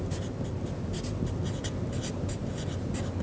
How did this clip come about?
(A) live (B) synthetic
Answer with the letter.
A